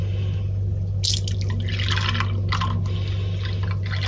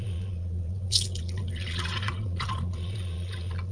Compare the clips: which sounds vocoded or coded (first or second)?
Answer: second